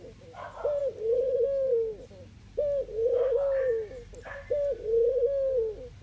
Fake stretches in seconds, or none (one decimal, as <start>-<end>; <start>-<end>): none